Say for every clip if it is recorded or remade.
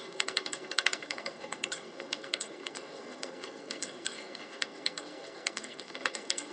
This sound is remade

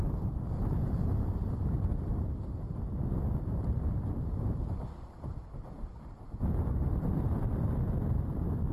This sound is recorded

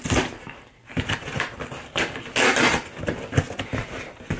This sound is recorded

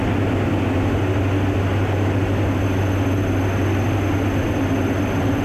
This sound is recorded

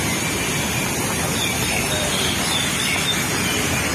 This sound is remade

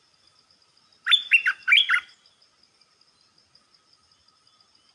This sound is recorded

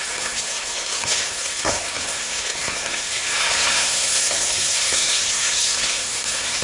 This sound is remade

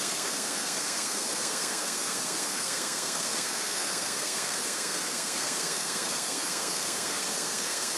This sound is remade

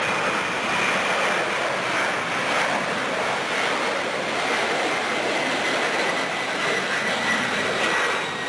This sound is recorded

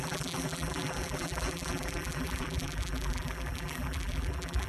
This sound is remade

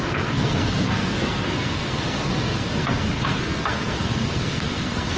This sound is remade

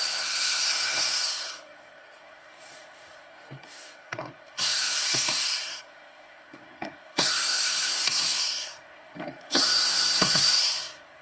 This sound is remade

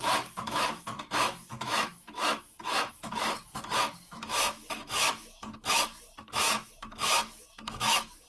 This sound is remade